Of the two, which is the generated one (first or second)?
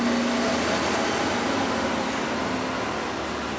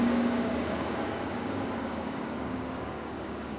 second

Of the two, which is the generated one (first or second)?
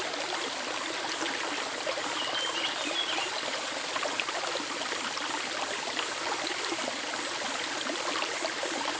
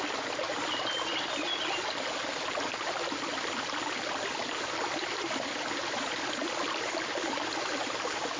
first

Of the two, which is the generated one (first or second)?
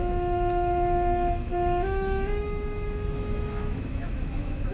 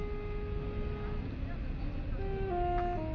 first